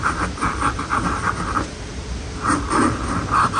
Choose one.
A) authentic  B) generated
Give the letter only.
A